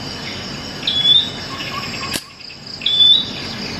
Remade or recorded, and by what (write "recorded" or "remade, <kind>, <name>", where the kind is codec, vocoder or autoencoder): recorded